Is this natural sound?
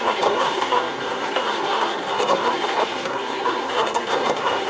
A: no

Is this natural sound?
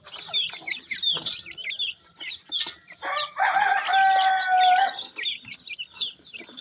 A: yes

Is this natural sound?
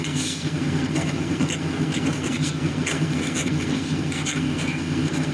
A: no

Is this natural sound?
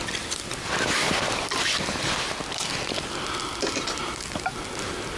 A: yes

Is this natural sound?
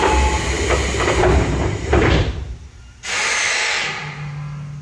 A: yes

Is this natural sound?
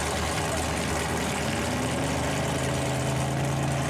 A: yes